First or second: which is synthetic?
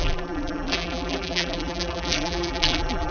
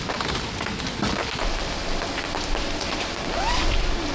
first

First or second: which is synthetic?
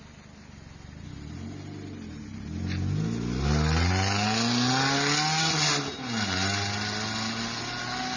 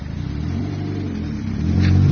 second